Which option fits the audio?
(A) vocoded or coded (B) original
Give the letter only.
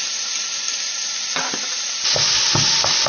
B